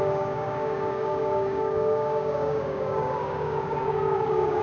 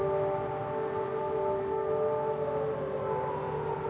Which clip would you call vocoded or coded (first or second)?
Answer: first